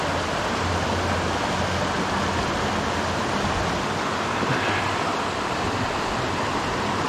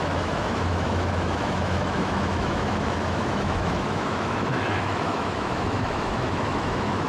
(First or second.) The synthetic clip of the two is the second